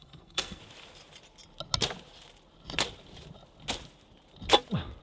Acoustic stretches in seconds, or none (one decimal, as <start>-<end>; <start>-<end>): 0.6-5.0